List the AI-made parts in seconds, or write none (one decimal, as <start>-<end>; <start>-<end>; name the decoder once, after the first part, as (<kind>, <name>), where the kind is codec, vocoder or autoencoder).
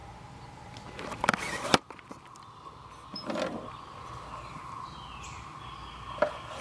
none